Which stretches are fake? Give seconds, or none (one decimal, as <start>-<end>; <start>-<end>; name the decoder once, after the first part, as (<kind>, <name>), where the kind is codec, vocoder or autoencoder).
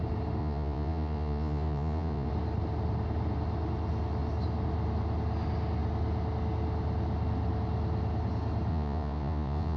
0.4-2.3 (vocoder, Vocos); 8.7-9.8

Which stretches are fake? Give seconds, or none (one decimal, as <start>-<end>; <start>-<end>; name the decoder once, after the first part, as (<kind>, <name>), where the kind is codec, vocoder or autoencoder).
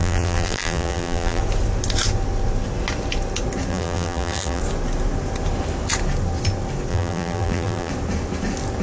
0.0-1.4 (vocoder, BigVGAN v2); 3.7-4.6; 6.9-7.9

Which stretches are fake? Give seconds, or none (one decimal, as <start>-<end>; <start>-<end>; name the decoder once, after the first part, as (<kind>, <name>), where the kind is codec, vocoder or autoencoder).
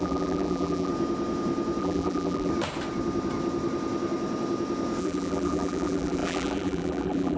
0.0-0.9 (vocoder, BigVGAN v2); 1.8-2.5; 5.0-7.4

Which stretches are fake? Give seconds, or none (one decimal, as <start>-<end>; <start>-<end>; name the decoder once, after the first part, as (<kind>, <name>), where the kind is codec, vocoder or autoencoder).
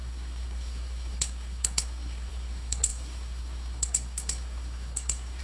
0.0-5.4 (codec, SNAC)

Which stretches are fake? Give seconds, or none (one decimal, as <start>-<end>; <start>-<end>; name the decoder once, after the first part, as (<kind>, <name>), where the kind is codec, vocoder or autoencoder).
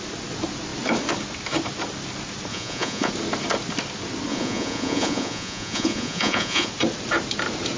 2.5-3.1 (vocoder, Vocos); 4.3-6.7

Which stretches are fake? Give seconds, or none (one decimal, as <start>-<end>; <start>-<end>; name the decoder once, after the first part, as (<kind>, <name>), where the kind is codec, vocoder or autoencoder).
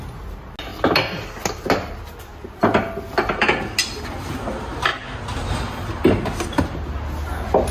none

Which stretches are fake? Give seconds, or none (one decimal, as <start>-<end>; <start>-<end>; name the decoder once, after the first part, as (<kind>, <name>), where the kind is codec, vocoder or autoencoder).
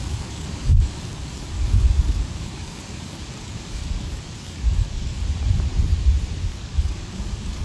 0.0-5.2 (codec, DAC); 6.4-7.6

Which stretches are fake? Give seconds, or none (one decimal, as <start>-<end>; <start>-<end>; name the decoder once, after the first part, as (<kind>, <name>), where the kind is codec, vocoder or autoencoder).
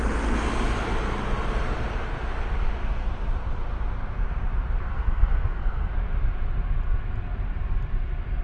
4.9-5.9 (codec, SNAC)